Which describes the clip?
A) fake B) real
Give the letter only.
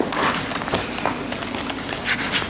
B